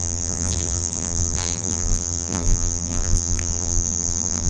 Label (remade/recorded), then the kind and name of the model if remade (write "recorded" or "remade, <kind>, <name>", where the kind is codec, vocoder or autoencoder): remade, vocoder, BigVGAN v2